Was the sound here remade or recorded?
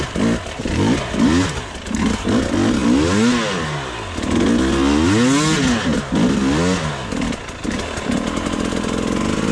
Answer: recorded